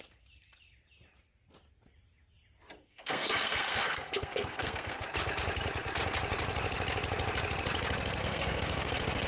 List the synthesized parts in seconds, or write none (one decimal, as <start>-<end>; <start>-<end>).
2.8-5.0; 8.2-9.3